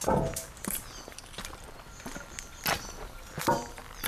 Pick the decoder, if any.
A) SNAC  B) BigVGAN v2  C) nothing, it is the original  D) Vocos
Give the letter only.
B